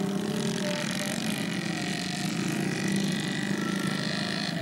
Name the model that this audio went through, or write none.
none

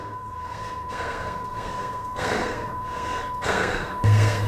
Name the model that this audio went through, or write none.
codec, SNAC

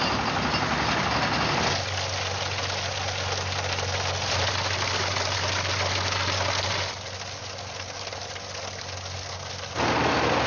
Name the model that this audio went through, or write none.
none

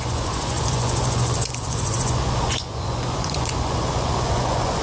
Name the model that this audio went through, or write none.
vocoder, Vocos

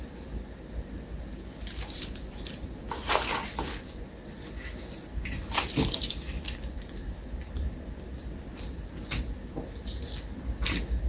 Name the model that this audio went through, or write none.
none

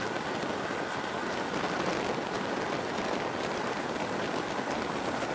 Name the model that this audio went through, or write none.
none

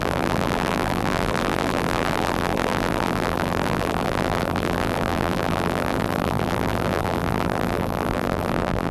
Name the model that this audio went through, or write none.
vocoder, BigVGAN v2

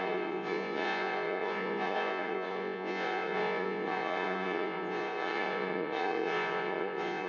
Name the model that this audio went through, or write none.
vocoder, Vocos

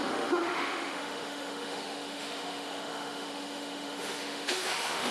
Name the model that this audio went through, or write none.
autoencoder, DAC-VAE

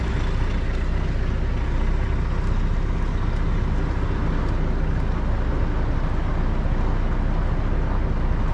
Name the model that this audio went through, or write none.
none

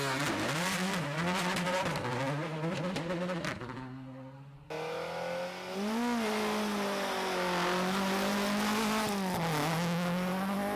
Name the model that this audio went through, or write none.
none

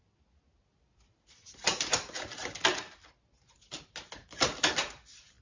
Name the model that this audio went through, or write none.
none